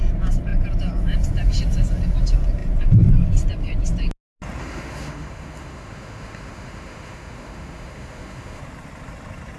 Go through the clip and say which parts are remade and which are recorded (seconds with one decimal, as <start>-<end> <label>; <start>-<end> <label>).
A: 0.0-4.6 recorded; 4.6-8.6 remade; 8.6-9.6 recorded